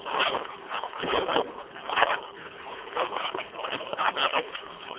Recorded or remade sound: remade